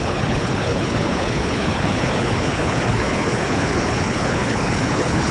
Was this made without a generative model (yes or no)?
no